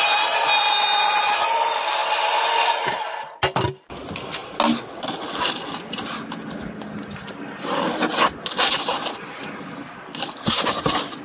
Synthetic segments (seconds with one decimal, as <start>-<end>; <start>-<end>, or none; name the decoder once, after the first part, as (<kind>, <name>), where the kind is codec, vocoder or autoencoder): none